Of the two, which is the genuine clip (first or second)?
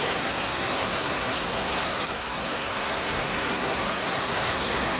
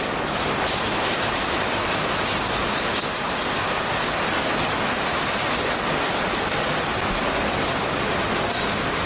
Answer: second